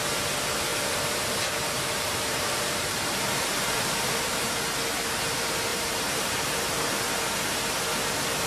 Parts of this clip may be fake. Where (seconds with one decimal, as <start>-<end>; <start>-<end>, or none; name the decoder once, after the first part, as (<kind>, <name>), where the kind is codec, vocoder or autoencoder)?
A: 0.7-4.5 (vocoder, BigVGAN v2); 5.7-6.3